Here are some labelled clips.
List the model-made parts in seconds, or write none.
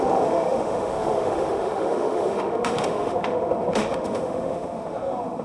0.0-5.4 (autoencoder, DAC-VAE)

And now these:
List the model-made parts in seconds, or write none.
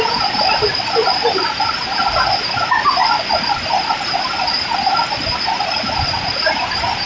none